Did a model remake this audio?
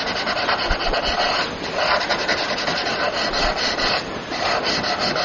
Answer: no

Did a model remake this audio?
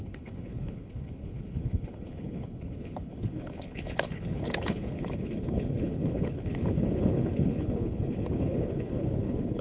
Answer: yes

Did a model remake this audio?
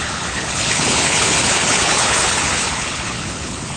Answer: yes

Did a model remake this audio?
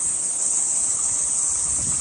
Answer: yes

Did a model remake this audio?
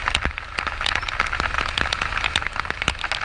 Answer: no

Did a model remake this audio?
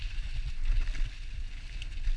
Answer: no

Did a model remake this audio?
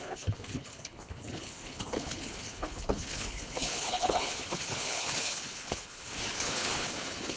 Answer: yes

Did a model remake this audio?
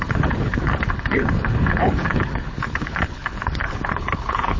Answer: yes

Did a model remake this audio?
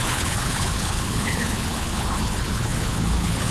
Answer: yes